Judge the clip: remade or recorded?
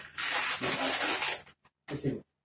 recorded